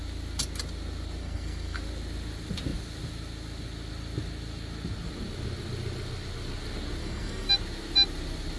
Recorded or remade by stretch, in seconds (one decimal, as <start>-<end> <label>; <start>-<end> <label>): 0.0-1.2 recorded; 1.2-1.8 remade; 1.8-7.0 recorded; 7.0-7.5 remade; 7.5-8.6 recorded

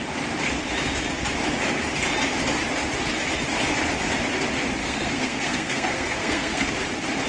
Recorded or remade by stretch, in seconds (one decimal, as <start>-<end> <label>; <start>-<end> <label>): 0.0-4.8 recorded; 4.8-6.7 remade; 6.7-7.3 recorded